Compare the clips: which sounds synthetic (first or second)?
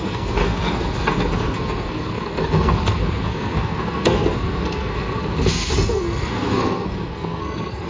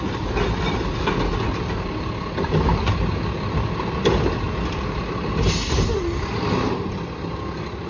first